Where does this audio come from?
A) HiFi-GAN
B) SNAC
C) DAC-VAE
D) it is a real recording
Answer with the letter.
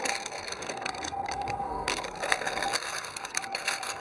B